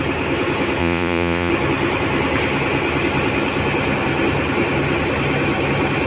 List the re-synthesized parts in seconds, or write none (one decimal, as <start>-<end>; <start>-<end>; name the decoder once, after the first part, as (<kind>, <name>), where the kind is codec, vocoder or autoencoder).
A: 0.8-1.5 (vocoder, Vocos)